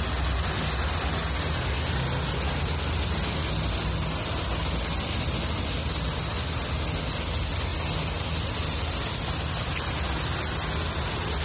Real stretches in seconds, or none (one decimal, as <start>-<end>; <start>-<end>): 0.0-11.4